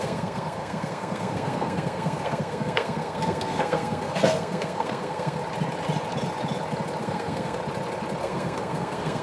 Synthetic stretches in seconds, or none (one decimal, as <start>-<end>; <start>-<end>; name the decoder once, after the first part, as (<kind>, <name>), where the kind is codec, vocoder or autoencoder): 0.0-5.4 (codec, SNAC); 7.0-7.6; 8.2-9.2